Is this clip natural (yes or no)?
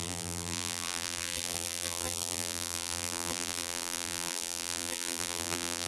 no